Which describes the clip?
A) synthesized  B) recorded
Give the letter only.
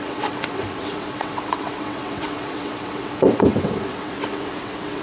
A